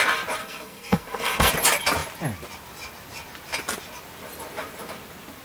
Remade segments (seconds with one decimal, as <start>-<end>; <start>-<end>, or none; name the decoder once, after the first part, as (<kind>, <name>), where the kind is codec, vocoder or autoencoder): 0.4-1.5 (codec, SNAC)